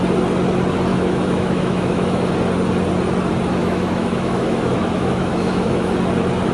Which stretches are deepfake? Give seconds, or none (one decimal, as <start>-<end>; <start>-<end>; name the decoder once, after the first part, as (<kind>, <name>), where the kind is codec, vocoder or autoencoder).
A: 0.9-2.3 (autoencoder, DAC-VAE); 3.6-5.9